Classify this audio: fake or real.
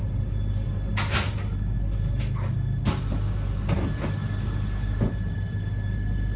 real